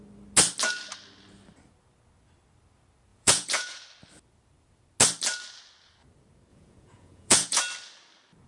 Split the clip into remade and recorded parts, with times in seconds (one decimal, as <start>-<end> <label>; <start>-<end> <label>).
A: 0.0-3.1 recorded; 3.1-3.8 remade; 3.8-6.5 recorded; 6.5-7.6 remade; 7.6-8.5 recorded